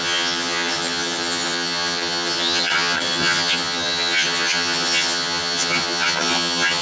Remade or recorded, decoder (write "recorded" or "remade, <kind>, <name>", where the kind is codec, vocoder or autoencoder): remade, vocoder, HiFi-GAN